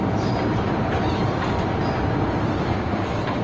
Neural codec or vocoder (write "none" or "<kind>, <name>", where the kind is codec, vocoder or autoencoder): vocoder, BigVGAN v2